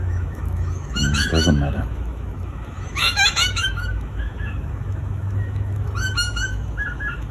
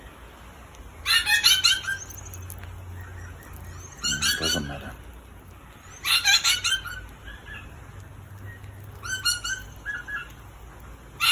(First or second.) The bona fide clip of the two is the second